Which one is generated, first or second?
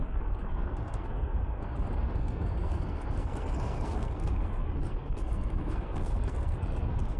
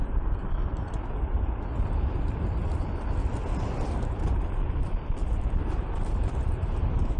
first